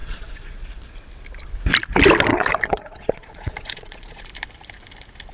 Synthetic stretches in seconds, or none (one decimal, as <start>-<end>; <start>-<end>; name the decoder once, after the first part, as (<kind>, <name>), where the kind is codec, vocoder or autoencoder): 0.0-0.6 (vocoder, Vocos); 2.3-4.2